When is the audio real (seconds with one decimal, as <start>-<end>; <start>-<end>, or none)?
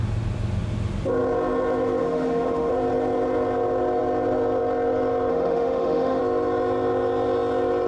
0.0-2.0; 2.7-5.3; 6.2-7.9